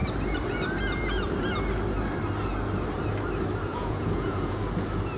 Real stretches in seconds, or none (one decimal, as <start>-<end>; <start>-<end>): 0.0-3.7; 4.6-5.2